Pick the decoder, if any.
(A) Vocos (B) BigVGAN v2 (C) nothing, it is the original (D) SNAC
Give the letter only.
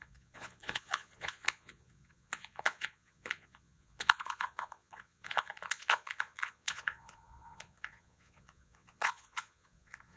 A